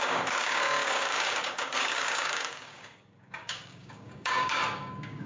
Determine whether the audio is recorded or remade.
remade